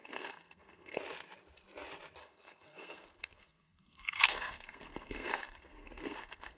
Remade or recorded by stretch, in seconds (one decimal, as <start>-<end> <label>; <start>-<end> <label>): 0.0-1.0 remade; 1.0-2.2 recorded; 2.2-6.6 remade